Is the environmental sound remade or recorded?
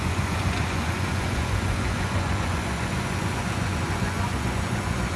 remade